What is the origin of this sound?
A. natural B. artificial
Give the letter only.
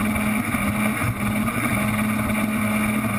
A